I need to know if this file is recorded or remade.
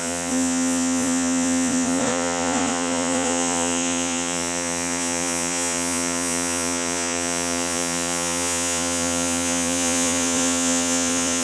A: remade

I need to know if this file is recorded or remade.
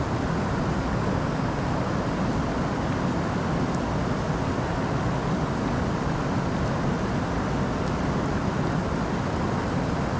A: recorded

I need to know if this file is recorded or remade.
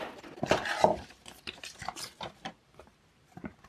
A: remade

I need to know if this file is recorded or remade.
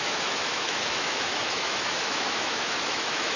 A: remade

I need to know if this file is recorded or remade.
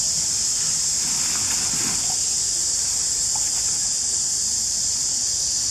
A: recorded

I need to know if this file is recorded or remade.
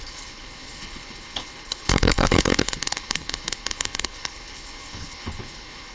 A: remade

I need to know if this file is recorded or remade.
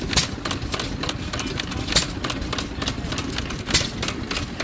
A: recorded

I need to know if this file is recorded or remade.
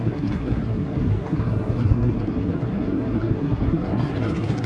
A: remade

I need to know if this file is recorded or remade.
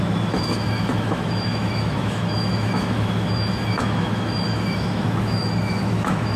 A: remade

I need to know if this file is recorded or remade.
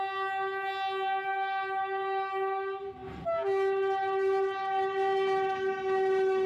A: recorded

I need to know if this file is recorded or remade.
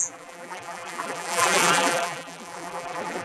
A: remade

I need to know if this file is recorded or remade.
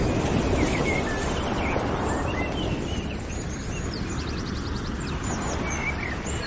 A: recorded